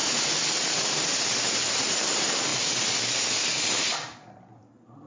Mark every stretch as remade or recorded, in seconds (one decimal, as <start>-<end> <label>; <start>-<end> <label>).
0.0-5.1 recorded